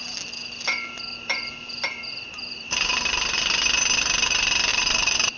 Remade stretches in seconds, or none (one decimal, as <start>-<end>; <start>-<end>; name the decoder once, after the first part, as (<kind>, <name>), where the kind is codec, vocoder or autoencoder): 2.1-3.6 (vocoder, BigVGAN v2); 4.7-5.4